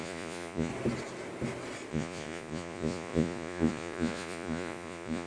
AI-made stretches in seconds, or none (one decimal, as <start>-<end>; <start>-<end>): 0.0-0.7; 1.9-5.3